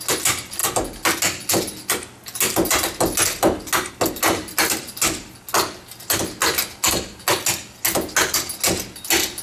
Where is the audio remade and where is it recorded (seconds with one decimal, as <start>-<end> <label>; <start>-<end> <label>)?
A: 0.0-9.4 recorded